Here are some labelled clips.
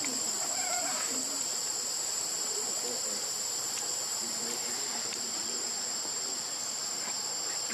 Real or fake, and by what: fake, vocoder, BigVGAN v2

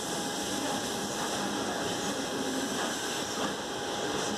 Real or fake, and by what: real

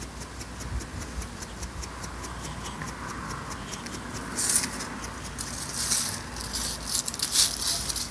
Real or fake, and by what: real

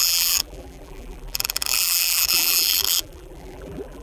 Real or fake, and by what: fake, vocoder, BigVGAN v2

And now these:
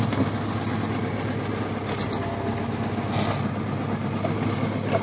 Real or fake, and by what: real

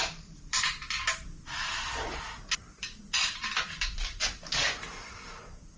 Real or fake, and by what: fake, vocoder, BigVGAN v2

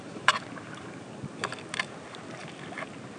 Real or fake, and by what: real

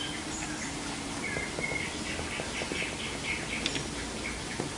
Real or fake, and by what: real